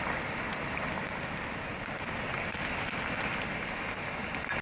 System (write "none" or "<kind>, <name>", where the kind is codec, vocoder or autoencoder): none